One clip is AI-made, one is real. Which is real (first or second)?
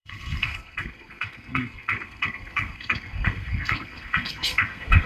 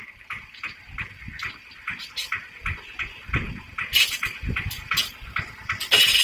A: second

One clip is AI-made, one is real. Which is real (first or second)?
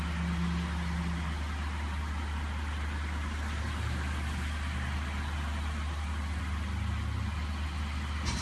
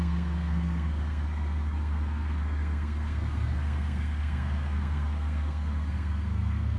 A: first